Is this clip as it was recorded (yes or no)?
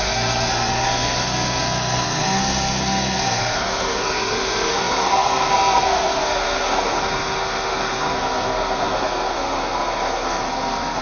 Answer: no